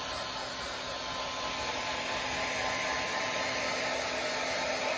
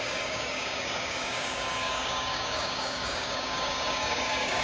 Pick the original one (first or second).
first